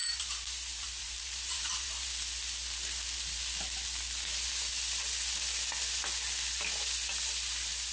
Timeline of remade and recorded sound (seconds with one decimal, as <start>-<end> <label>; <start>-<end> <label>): 0.0-2.1 remade; 2.1-7.9 recorded